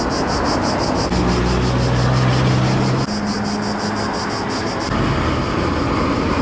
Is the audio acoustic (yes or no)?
yes